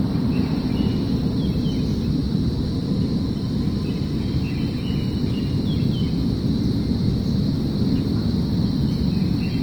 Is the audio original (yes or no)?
yes